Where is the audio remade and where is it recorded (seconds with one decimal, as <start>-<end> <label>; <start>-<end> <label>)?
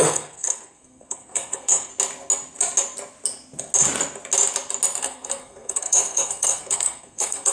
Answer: 0.0-1.9 remade; 1.9-5.0 recorded; 5.0-7.5 remade